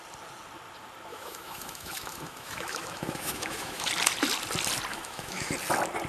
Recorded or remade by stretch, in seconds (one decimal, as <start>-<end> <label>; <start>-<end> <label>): 0.0-1.1 recorded; 1.1-3.9 remade; 3.9-4.9 recorded; 4.9-5.5 remade; 5.5-6.1 recorded